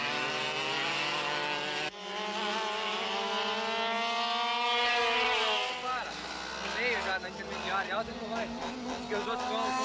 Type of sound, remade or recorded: recorded